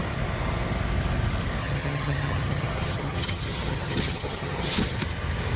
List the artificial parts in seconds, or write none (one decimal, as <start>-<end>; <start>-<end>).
1.6-5.0